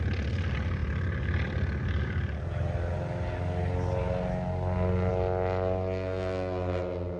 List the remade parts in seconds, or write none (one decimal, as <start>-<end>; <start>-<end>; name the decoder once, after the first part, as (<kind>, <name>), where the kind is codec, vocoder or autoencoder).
none